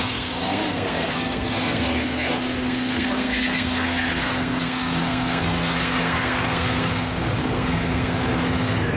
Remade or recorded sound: remade